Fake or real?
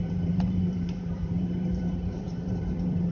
fake